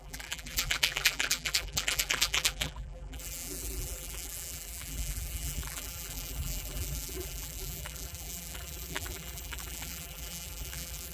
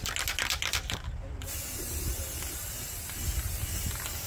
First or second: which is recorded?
second